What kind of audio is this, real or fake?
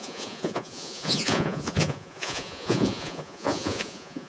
fake